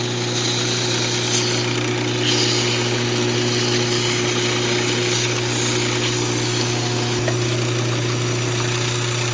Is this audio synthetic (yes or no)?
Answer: no